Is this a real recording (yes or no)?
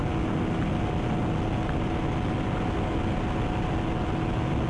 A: yes